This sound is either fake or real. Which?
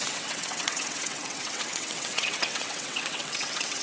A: fake